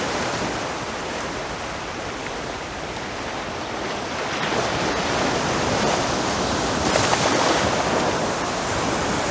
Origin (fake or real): fake